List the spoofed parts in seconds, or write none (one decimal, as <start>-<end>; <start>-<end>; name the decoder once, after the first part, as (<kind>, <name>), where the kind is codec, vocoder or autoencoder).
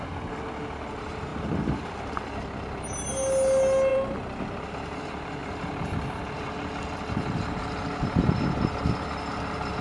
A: 1.3-2.3 (vocoder, BigVGAN v2); 3.9-4.4; 5.4-6.5